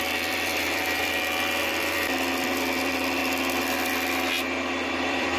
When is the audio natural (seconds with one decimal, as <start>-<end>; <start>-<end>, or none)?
3.2-4.9